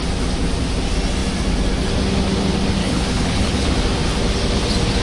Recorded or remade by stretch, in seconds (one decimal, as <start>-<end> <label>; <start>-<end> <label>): 0.0-2.8 recorded; 2.8-3.7 remade; 3.7-5.0 recorded